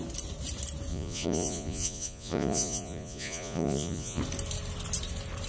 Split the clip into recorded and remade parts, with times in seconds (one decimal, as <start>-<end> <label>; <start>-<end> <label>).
0.0-0.9 recorded; 0.9-4.2 remade; 4.2-5.5 recorded